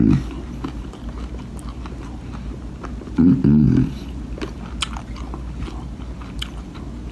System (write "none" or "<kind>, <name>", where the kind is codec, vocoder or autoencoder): none